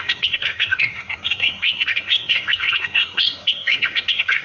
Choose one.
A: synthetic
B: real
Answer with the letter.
A